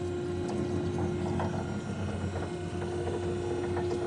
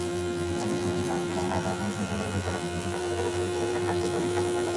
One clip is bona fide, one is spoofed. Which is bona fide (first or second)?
first